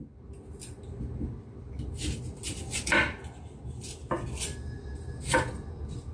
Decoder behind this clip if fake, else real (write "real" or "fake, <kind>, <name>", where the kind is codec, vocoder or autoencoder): real